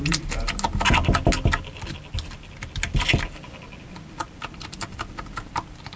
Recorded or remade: recorded